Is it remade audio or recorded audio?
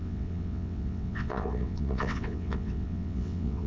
remade